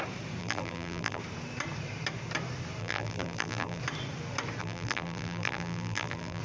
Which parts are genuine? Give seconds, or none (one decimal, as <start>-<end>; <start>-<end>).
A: 0.0-0.4; 1.2-2.8; 3.8-4.6